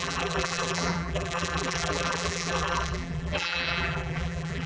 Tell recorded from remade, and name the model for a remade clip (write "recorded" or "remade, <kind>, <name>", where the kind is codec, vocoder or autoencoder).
remade, vocoder, BigVGAN v2